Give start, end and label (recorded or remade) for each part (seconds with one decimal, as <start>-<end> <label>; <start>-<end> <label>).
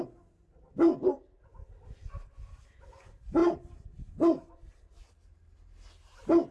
0.0-6.5 recorded